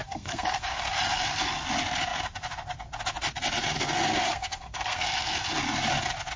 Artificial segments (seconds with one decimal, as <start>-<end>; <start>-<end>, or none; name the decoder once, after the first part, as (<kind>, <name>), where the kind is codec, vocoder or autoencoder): 0.0-0.8 (codec, SNAC); 4.3-5.3